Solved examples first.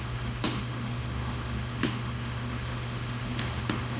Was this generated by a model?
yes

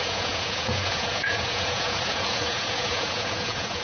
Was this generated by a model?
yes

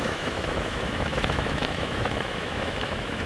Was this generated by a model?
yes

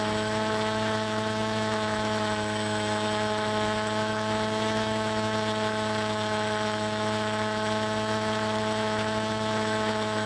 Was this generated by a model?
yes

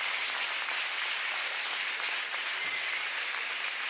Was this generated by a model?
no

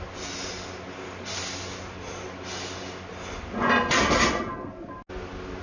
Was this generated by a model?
no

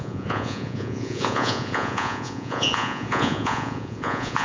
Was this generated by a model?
yes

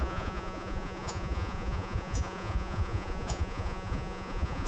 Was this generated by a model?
yes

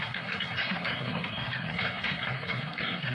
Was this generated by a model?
yes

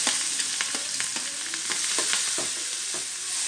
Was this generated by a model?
no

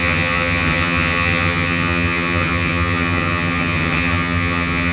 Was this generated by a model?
yes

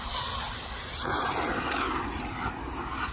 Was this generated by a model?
no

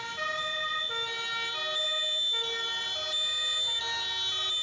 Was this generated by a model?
no